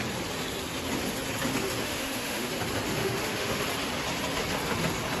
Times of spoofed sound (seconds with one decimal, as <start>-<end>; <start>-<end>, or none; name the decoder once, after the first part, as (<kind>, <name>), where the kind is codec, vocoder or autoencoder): 1.8-2.5 (autoencoder, DAC-VAE); 3.0-3.6